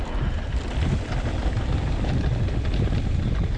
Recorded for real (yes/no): yes